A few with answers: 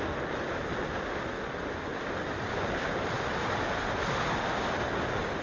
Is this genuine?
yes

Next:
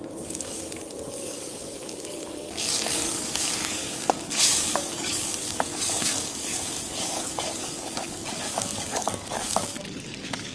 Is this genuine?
no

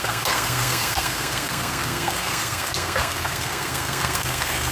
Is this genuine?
no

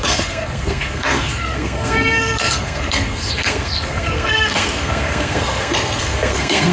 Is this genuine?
no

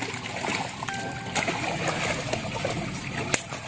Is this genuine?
yes